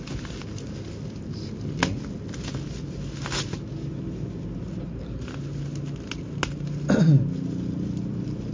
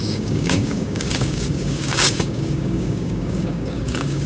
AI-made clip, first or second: second